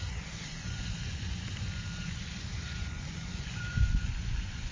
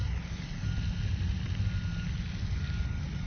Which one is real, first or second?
second